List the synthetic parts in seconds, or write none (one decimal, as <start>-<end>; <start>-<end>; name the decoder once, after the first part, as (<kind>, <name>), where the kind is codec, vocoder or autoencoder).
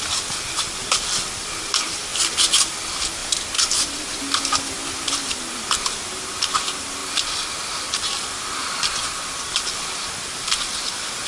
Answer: 0.0-2.1 (vocoder, BigVGAN v2); 2.6-3.2; 5.3-11.3